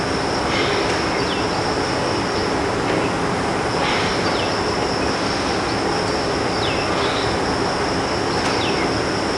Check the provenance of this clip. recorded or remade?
recorded